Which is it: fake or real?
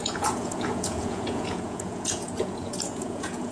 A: fake